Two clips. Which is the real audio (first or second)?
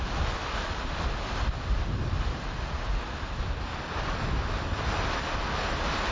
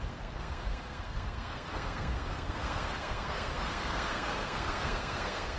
first